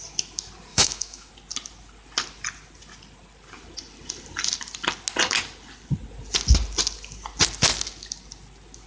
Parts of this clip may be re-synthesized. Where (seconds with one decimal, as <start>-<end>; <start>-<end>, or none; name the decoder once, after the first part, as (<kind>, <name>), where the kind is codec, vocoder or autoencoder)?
0.7-1.3 (autoencoder, DAC-VAE)